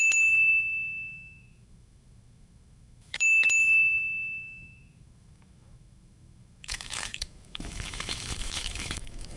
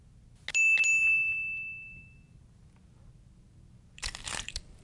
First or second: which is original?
second